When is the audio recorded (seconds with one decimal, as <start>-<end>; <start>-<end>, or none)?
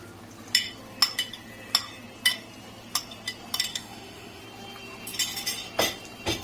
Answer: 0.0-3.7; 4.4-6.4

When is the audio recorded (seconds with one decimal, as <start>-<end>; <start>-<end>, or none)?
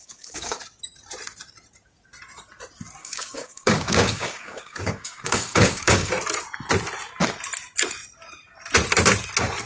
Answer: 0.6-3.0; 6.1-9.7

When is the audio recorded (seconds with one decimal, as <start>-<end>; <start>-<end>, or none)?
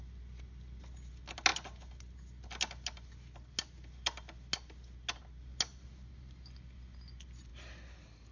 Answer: 0.0-8.3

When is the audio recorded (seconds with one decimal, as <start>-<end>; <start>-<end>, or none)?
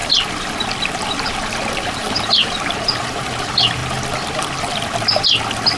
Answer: 0.0-1.3; 3.8-5.8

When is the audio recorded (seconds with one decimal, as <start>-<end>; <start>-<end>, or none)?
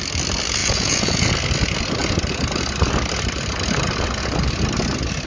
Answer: 0.0-0.6; 1.3-5.3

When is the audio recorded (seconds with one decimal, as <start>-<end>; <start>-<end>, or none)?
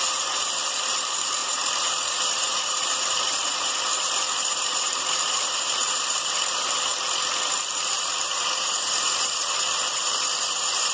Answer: 6.9-7.6